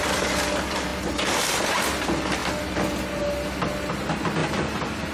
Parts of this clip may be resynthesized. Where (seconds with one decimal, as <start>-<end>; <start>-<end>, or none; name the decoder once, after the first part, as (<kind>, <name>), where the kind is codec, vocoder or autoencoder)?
4.4-5.1 (vocoder, BigVGAN v2)